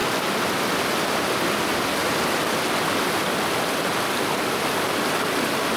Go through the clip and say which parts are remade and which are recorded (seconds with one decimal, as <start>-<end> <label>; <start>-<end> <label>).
0.0-5.8 recorded